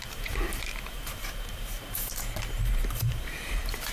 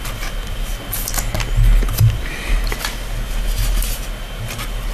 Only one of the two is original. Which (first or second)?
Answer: second